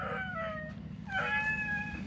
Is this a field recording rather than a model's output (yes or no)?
yes